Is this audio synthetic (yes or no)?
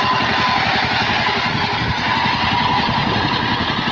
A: no